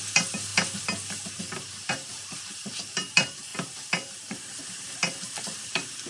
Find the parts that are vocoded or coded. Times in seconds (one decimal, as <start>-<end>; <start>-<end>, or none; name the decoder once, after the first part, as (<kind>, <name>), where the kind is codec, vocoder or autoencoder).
0.0-0.5 (vocoder, BigVGAN v2); 1.4-6.1